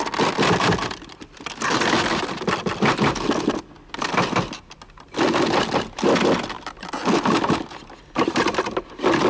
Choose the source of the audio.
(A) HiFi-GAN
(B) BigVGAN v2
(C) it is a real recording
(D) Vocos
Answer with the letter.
C